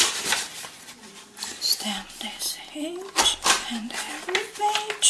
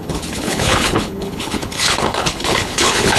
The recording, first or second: first